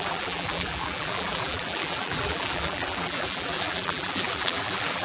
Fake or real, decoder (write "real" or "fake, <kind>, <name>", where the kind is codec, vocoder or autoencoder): fake, vocoder, BigVGAN v2